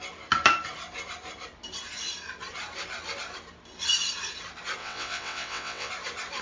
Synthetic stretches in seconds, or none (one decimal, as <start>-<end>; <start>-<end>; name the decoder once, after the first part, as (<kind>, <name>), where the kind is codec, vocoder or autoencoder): 4.8-5.9 (vocoder, WaveNeXt)